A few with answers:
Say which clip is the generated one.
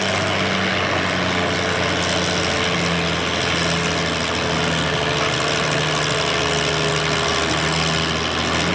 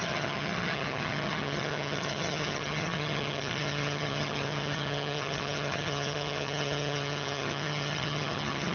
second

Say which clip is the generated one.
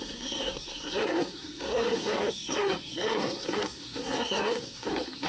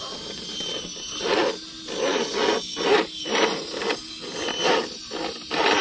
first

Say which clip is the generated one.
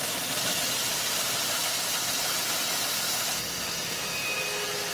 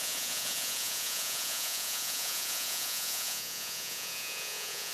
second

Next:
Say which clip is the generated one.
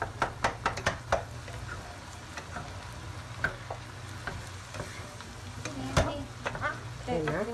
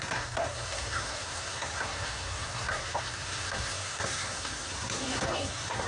second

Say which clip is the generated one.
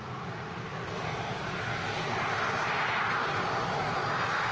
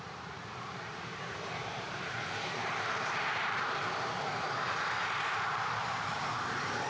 second